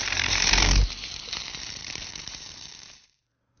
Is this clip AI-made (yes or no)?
yes